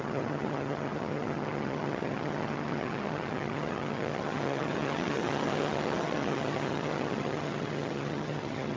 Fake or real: fake